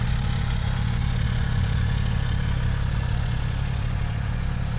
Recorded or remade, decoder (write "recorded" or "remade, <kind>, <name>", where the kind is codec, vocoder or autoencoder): remade, vocoder, Vocos